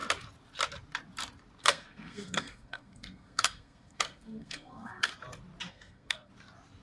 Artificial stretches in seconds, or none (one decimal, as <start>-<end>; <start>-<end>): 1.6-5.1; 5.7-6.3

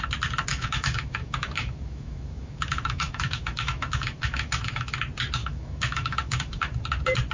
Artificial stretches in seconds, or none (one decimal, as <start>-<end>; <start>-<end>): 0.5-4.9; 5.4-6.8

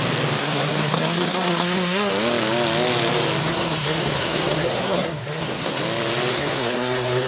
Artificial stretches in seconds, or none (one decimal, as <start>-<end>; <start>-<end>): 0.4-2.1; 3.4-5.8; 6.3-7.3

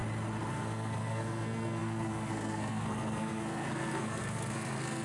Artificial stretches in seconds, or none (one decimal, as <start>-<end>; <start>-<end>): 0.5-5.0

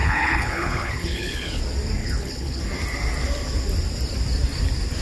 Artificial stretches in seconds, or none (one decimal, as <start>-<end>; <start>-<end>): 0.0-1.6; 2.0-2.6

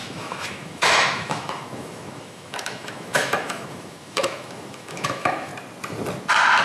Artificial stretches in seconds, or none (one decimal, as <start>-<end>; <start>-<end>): 0.0-5.5

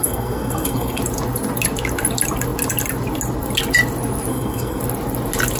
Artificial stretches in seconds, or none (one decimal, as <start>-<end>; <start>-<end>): 0.0-1.0; 4.3-4.8